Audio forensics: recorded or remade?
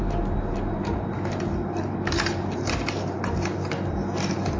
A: recorded